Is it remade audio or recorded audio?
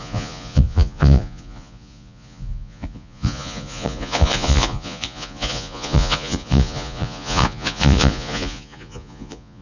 remade